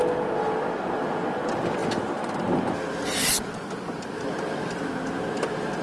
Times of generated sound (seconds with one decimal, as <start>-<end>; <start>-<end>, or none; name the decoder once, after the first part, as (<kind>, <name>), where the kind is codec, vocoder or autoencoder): none